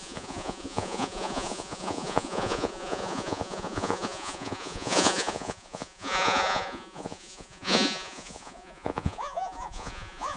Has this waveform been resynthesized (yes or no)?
yes